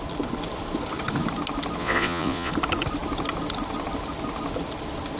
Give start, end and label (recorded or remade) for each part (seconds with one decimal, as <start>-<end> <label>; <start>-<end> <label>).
0.0-1.8 recorded; 1.8-2.5 remade; 2.5-5.2 recorded